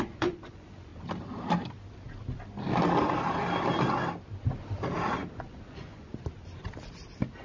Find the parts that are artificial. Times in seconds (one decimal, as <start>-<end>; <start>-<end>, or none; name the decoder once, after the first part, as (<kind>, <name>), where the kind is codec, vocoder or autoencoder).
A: 0.0-0.9 (vocoder, Vocos); 5.3-6.1